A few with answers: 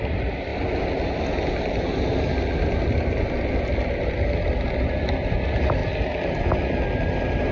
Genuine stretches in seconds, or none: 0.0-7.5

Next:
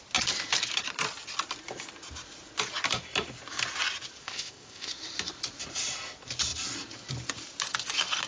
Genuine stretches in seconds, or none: 0.0-4.2; 4.9-8.3

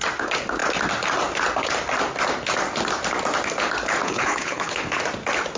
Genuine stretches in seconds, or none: 0.0-4.0; 4.9-5.6

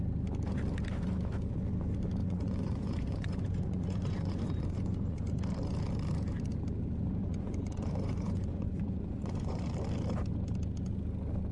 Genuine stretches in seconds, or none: 0.0-2.2; 5.3-7.2; 9.6-11.5

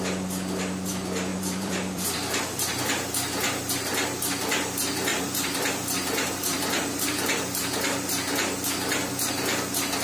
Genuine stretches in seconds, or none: 0.0-1.3; 3.7-5.1; 5.7-6.5; 7.7-10.0

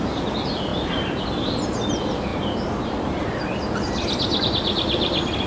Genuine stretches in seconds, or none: 0.7-1.2; 2.3-5.5

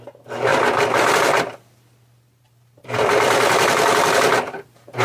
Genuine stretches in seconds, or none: 0.0-0.5; 1.1-5.0